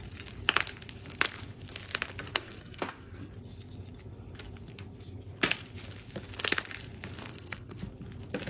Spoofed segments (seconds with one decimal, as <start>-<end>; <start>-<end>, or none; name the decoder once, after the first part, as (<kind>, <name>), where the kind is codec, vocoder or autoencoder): 2.3-3.3 (codec, SNAC); 7.3-7.8